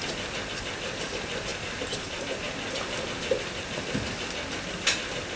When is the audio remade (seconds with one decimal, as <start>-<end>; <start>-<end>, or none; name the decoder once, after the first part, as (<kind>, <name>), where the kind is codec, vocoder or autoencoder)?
none